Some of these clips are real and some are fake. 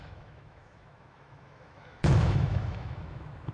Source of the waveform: fake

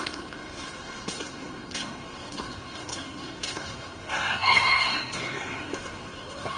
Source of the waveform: fake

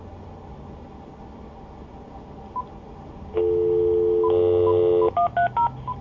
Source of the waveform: real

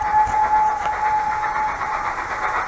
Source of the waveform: real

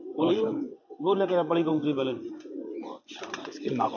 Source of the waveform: fake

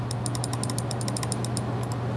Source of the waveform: real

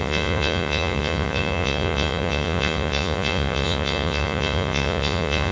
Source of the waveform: fake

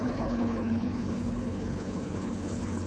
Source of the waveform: fake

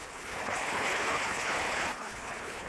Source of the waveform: fake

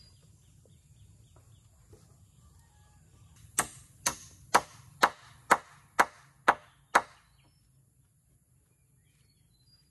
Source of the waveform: real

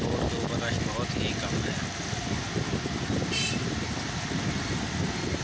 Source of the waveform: real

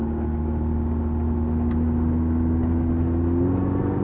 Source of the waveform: real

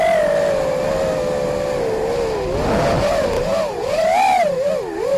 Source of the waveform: real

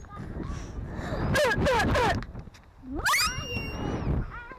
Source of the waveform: real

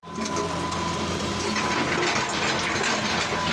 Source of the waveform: real